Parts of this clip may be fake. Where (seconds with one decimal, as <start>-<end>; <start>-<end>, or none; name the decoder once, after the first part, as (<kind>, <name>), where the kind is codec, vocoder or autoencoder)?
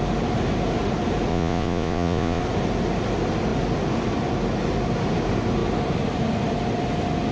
1.3-2.4 (vocoder, Vocos)